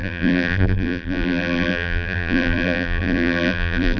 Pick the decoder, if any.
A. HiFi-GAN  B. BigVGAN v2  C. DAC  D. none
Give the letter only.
B